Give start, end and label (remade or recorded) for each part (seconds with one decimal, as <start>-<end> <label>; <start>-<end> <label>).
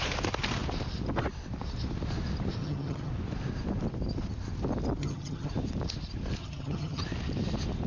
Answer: 0.0-2.6 recorded; 2.6-3.1 remade; 3.1-5.0 recorded; 5.0-5.5 remade; 5.5-6.4 recorded; 6.4-7.0 remade; 7.0-7.9 recorded